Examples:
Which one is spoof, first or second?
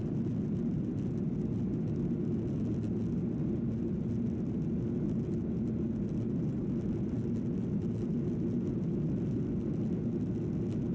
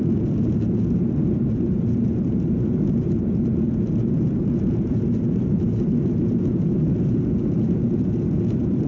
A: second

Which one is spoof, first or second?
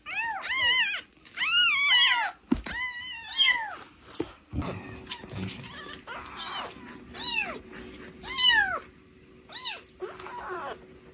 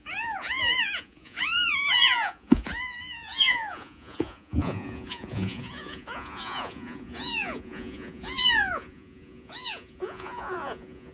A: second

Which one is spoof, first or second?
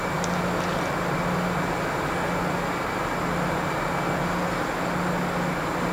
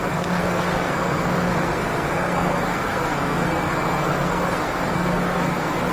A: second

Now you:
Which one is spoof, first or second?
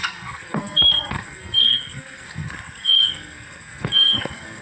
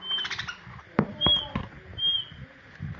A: first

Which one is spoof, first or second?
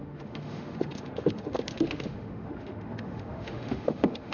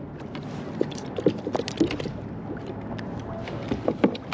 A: first